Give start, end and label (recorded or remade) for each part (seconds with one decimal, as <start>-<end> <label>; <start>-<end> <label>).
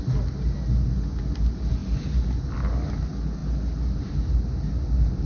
0.0-5.3 recorded